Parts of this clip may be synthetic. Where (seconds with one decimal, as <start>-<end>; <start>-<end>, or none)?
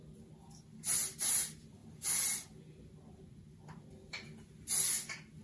none